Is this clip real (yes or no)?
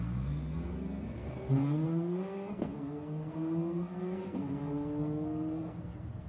no